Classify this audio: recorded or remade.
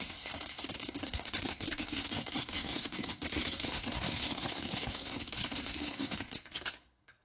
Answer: remade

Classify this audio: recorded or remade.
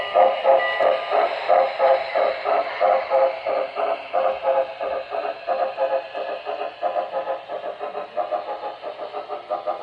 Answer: recorded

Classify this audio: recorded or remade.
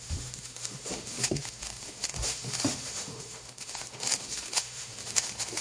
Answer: remade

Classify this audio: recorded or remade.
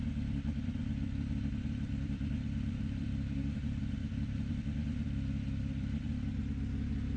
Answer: remade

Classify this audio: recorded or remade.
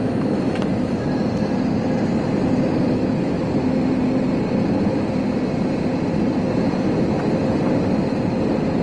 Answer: recorded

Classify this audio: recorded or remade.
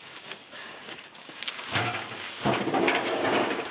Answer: remade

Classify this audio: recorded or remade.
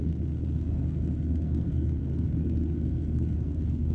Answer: remade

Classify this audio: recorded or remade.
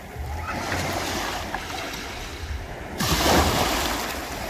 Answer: recorded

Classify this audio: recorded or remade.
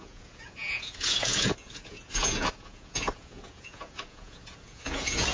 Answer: remade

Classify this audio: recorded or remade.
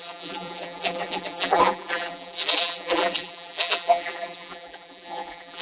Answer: remade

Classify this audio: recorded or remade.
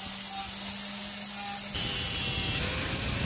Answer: recorded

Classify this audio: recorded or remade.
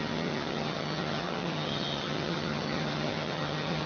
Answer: remade